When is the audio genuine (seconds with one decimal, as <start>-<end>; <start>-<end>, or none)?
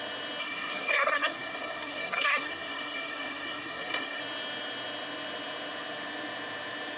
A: 0.0-0.4; 4.2-7.0